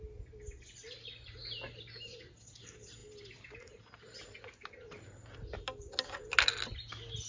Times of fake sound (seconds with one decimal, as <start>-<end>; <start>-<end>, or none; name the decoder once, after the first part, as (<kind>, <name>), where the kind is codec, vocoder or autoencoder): none